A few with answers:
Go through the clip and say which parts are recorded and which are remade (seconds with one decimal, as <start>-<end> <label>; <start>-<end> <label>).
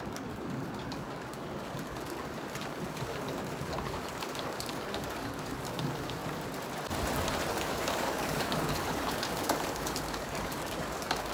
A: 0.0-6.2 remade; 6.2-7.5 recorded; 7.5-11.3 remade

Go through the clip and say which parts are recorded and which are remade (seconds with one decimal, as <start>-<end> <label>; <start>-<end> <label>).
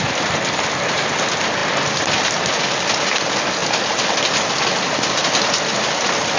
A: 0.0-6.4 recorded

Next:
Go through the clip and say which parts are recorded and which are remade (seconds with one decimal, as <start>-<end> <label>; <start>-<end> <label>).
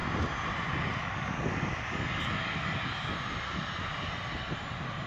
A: 0.0-1.0 recorded; 1.0-3.1 remade; 3.1-5.1 recorded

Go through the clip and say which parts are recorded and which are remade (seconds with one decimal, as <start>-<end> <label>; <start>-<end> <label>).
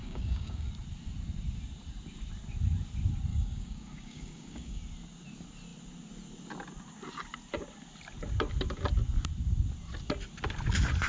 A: 0.0-0.7 remade; 0.7-3.3 recorded; 3.3-4.8 remade; 4.8-11.1 recorded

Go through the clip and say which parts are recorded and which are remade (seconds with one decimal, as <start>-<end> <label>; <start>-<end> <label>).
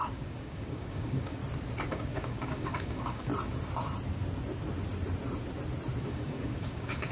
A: 0.0-1.4 remade; 1.4-1.9 recorded; 1.9-3.3 remade; 3.3-6.0 recorded; 6.0-7.1 remade